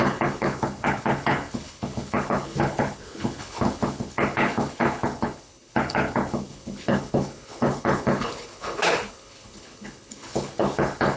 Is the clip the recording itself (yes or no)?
no